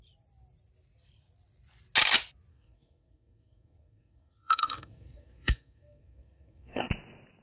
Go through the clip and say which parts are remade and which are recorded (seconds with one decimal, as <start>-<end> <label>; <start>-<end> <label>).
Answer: 0.0-2.5 recorded; 2.5-6.9 remade; 6.9-7.4 recorded